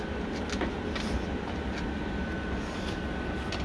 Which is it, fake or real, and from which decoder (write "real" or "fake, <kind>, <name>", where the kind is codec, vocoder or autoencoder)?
real